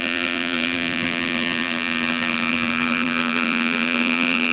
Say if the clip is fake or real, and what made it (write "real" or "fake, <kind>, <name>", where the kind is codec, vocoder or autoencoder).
fake, vocoder, BigVGAN v2